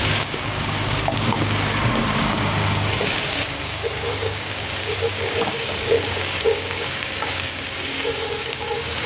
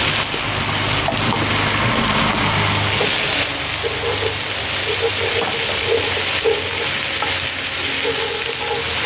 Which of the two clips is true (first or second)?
second